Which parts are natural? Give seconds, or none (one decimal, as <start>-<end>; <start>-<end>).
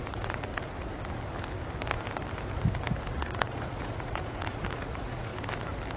0.5-3.1; 5.3-6.0